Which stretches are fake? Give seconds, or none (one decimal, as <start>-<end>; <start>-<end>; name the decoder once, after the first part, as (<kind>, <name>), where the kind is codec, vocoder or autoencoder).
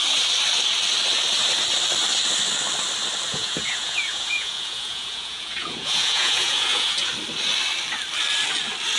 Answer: 3.3-7.1 (vocoder, Vocos)